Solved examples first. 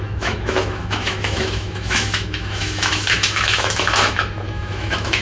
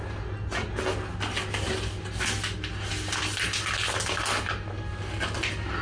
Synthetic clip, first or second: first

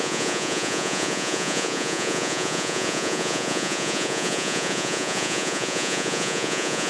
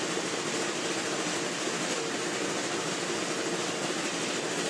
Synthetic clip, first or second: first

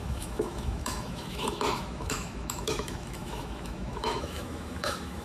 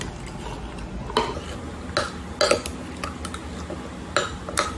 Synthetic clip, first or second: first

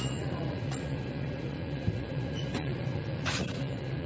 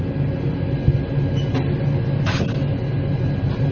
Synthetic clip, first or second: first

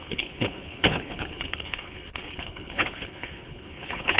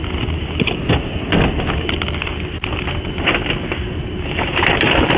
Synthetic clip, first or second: first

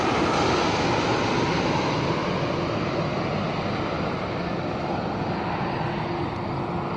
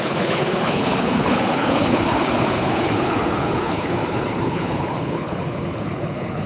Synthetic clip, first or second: second